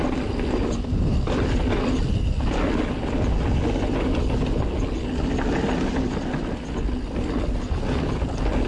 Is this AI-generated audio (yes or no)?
no